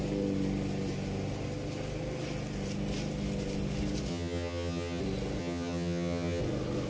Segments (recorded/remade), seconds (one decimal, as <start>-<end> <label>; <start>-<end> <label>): 0.0-4.1 recorded; 4.1-5.0 remade; 5.0-5.4 recorded; 5.4-6.4 remade; 6.4-6.9 recorded